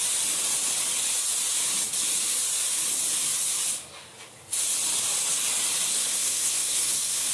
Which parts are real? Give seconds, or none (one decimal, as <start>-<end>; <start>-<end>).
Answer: 0.0-5.9